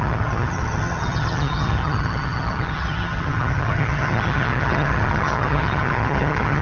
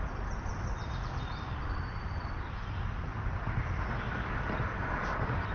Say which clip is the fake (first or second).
first